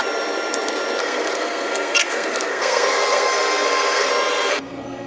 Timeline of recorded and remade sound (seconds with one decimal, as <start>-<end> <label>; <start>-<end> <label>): 0.0-1.0 recorded; 1.0-4.1 remade; 4.1-4.5 recorded; 4.5-5.1 remade